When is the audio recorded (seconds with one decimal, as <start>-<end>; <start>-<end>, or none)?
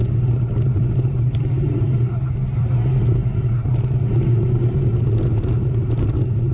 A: 0.0-6.5